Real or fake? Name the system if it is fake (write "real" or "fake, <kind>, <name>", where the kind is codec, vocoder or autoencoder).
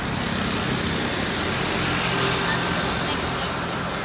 real